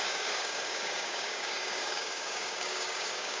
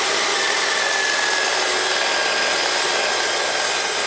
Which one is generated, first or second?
first